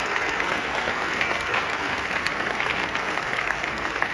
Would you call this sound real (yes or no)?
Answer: no